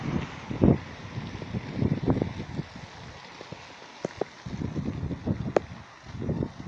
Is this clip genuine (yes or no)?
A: yes